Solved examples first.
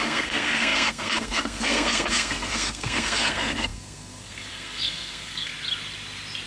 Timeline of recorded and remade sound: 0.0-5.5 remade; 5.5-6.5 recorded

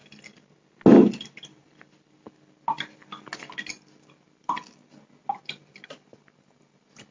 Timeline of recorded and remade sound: 0.0-7.1 recorded